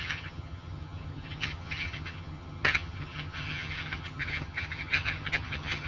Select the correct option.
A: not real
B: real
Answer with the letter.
A